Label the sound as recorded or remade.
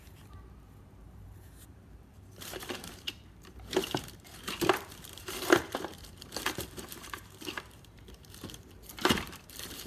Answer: remade